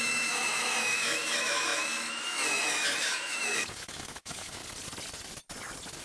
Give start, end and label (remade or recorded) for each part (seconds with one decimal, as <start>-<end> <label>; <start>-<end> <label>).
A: 0.0-4.6 remade; 4.6-6.0 recorded